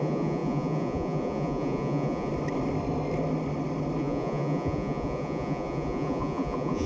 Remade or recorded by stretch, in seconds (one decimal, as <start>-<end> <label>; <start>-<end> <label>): 0.0-2.3 remade; 2.3-4.0 recorded; 4.0-6.9 remade